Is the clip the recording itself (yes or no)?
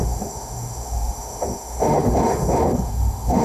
no